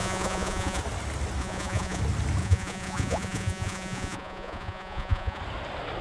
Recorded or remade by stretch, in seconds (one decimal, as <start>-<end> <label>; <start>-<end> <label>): 0.0-0.8 remade; 0.8-1.4 recorded; 1.4-2.0 remade; 2.0-2.4 recorded; 2.4-5.4 remade; 5.4-6.0 recorded